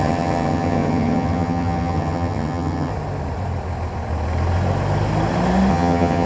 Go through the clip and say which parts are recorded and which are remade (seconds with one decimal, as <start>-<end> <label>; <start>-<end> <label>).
0.0-2.9 remade; 2.9-5.7 recorded; 5.7-6.3 remade